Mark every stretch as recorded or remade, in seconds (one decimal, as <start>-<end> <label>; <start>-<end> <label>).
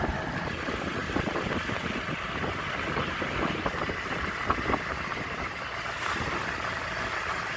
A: 0.0-7.6 recorded